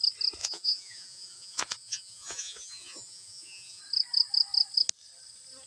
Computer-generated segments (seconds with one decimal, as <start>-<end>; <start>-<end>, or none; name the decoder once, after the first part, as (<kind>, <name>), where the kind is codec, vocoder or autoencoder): 0.4-3.8 (vocoder, Vocos)